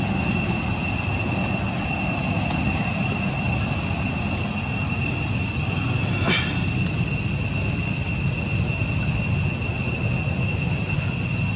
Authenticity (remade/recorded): recorded